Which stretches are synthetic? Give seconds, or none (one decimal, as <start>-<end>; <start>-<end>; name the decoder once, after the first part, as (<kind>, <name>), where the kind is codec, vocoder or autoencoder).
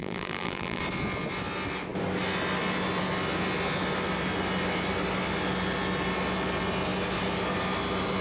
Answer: 0.0-0.8 (vocoder, BigVGAN v2)